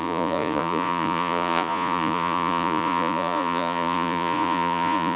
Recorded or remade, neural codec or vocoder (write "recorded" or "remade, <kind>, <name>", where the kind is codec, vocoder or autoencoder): remade, vocoder, Vocos